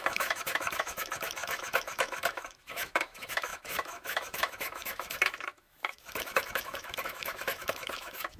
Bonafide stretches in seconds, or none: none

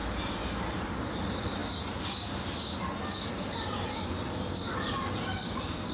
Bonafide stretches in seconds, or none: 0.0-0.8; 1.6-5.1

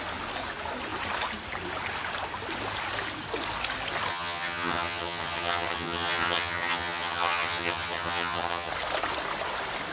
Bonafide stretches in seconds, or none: 0.0-4.1; 8.7-9.9

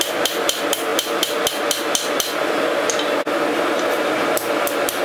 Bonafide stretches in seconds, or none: 0.0-5.0